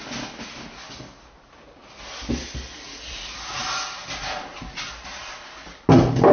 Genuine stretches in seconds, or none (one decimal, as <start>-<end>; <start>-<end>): 0.0-6.3